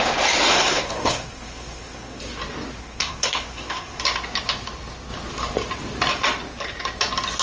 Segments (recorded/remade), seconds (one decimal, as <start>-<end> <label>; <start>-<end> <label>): 0.0-0.5 recorded; 0.5-2.2 remade; 2.2-2.8 recorded; 2.8-4.0 remade; 4.0-7.4 recorded